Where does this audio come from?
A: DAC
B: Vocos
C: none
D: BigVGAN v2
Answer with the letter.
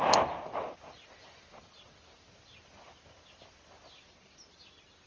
C